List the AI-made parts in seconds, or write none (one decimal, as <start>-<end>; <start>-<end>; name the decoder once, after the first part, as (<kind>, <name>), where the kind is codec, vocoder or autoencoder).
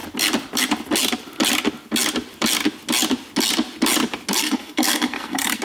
4.4-5.6 (codec, SNAC)